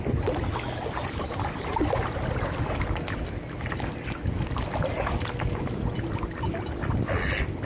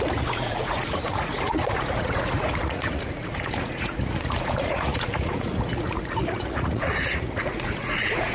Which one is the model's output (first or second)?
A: second